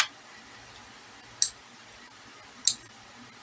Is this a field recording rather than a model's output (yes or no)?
yes